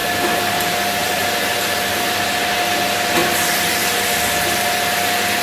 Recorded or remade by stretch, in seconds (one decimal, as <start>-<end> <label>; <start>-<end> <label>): 0.0-1.0 recorded; 1.0-2.0 remade; 2.0-5.4 recorded